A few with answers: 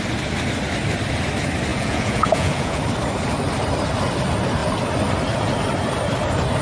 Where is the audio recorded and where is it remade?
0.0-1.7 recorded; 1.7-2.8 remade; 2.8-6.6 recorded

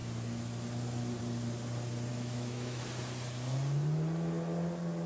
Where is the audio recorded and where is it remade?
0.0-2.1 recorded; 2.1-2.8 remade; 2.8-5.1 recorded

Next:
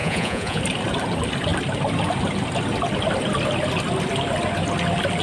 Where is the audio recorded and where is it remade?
0.0-0.6 remade; 0.6-5.2 recorded

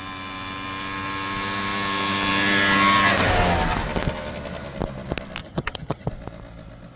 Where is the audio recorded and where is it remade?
0.0-5.4 recorded; 5.4-6.1 remade; 6.1-7.0 recorded

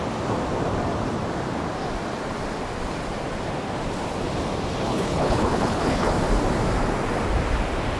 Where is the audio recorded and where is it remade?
0.0-4.9 recorded; 4.9-6.1 remade; 6.1-8.0 recorded

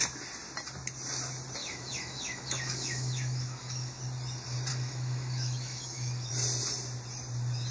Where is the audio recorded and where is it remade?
0.0-1.6 recorded; 1.6-4.0 remade; 4.0-4.7 recorded; 4.7-6.3 remade; 6.3-7.7 recorded

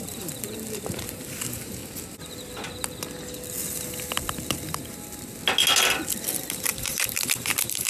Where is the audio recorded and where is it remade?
0.0-1.8 remade; 1.8-6.5 recorded; 6.5-7.9 remade

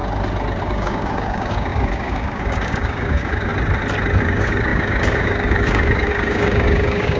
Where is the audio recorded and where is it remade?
0.0-0.6 recorded; 0.6-3.5 remade; 3.5-4.2 recorded; 4.2-7.2 remade